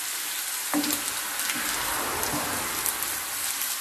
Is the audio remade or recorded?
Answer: recorded